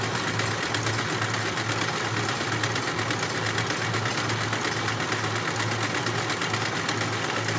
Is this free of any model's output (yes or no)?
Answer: yes